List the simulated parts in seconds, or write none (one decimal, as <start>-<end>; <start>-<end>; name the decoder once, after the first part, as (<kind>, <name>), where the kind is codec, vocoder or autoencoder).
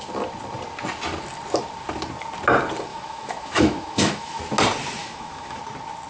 2.9-4.4 (autoencoder, DAC-VAE); 5.0-5.6